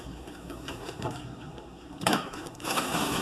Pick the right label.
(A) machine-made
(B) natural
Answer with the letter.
A